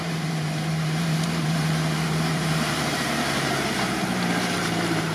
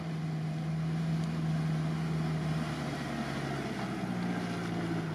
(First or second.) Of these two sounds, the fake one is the first